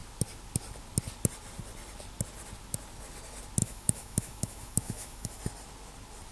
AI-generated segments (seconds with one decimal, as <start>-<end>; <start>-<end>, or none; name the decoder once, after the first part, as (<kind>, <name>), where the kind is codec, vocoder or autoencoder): 3.6-5.4 (autoencoder, DAC-VAE)